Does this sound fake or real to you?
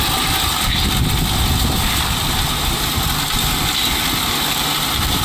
real